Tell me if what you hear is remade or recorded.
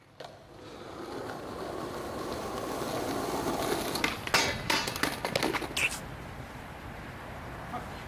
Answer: recorded